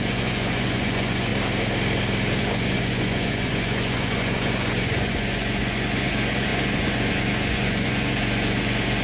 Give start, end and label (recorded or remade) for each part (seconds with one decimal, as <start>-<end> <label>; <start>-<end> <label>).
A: 0.0-1.3 remade; 1.3-2.4 recorded; 2.4-9.0 remade